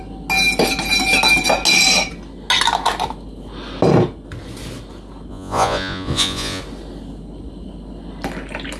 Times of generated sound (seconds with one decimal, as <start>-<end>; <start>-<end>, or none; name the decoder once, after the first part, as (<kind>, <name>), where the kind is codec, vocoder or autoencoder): 5.3-6.6 (vocoder, Vocos)